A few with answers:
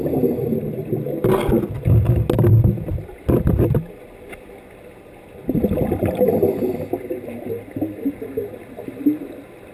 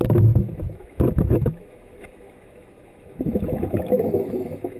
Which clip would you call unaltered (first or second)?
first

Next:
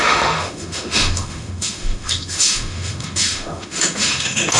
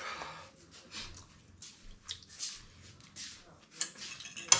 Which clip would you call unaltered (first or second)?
second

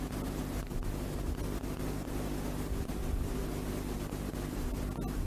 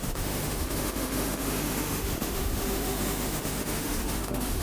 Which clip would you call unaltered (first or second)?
first